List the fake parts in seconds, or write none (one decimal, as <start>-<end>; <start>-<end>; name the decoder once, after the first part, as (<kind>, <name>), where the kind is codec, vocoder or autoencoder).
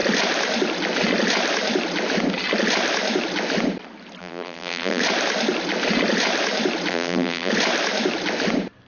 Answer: 4.2-5.0 (vocoder, BigVGAN v2); 6.9-7.5